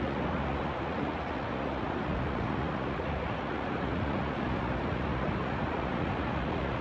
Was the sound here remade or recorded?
remade